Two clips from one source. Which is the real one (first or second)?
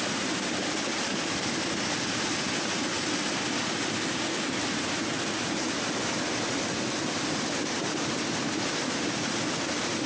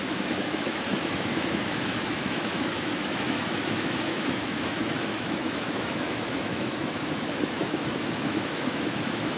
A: first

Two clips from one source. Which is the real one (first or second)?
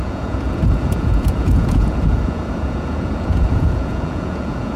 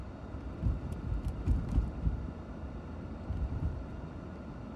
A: second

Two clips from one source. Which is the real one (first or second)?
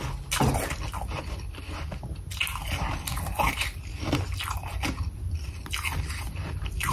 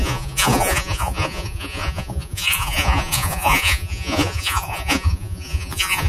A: first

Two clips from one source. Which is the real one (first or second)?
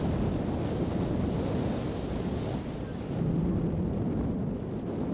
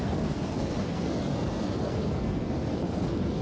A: first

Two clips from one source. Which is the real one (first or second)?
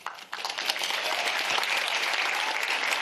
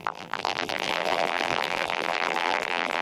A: first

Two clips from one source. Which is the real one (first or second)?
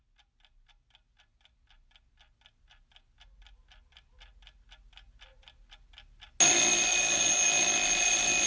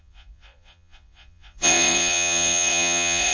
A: first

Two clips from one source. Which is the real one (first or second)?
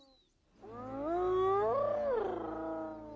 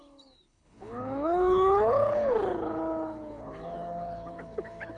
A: first